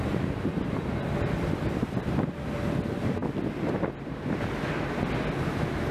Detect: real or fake real